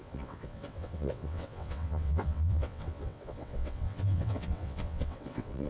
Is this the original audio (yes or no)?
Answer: no